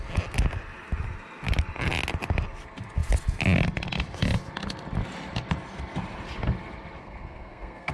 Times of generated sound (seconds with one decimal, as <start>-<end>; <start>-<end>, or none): 7.0-7.9